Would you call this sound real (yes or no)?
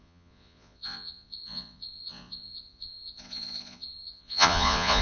no